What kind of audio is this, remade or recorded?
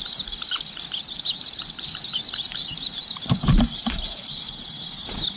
recorded